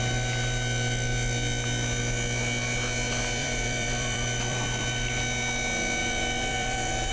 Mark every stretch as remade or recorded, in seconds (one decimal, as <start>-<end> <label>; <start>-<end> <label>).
0.0-3.4 recorded; 3.4-5.2 remade; 5.2-6.0 recorded; 6.0-7.1 remade